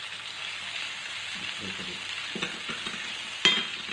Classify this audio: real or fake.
real